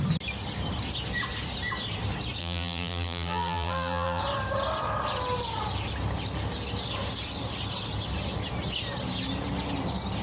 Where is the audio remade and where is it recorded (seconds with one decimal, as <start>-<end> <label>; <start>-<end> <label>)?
0.0-2.4 recorded; 2.4-4.2 remade; 4.2-10.2 recorded